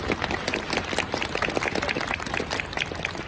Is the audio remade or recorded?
recorded